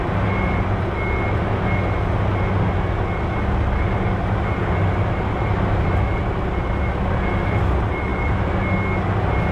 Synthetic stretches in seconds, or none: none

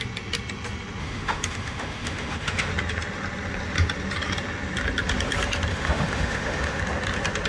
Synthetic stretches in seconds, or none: 1.0-2.7 (autoencoder, DAC-VAE); 5.7-6.8

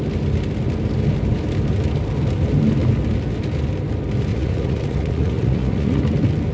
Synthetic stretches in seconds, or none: 4.3-6.0 (vocoder, Vocos)